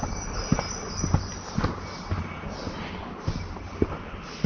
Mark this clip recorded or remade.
recorded